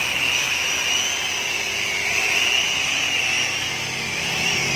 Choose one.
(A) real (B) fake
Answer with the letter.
A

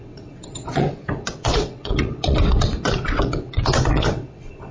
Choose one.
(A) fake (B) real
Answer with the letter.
A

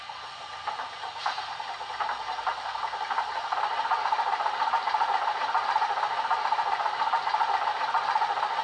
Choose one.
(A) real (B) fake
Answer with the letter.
A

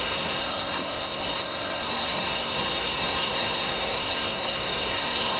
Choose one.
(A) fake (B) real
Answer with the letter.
A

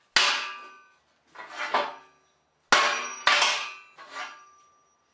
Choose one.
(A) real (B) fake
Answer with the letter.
A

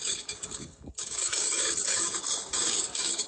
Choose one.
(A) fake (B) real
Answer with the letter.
A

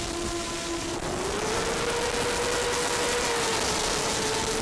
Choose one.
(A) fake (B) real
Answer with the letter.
B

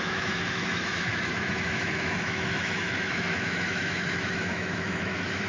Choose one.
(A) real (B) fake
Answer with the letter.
B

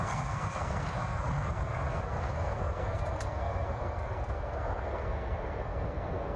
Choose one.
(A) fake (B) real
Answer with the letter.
A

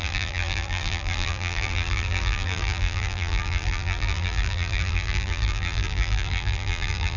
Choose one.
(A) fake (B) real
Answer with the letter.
A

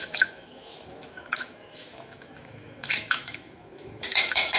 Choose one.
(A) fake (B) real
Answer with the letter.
A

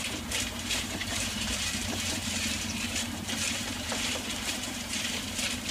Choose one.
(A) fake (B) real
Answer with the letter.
A